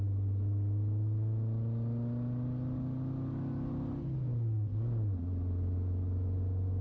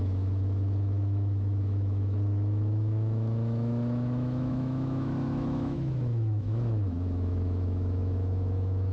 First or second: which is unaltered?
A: first